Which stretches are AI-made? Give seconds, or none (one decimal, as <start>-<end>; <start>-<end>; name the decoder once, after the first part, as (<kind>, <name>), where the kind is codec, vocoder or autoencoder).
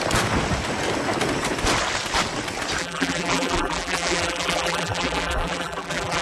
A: 2.8-6.2 (vocoder, BigVGAN v2)